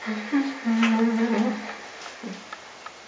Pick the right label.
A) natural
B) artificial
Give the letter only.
A